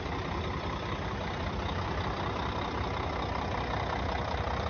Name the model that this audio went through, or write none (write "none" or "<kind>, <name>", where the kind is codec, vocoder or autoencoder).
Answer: none